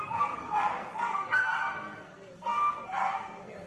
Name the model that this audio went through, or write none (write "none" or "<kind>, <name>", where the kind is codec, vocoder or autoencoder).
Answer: codec, SNAC